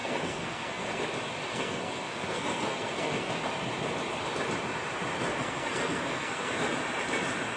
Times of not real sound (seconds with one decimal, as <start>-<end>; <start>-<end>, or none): 0.0-1.0; 1.5-3.3; 5.3-6.7